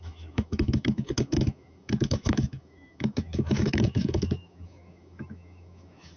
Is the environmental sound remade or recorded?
remade